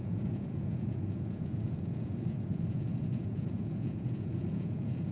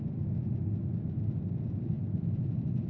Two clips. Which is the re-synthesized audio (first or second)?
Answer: first